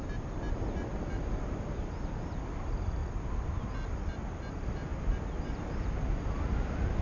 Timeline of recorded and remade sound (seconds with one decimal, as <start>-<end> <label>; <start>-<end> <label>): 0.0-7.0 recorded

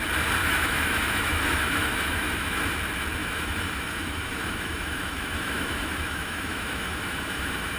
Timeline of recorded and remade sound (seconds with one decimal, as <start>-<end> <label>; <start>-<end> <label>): 0.0-0.4 recorded; 0.4-2.6 remade; 2.6-3.2 recorded; 3.2-7.8 remade

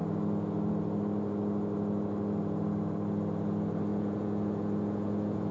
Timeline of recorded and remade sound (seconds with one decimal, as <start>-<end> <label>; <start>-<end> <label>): 0.0-3.9 recorded; 3.9-5.5 remade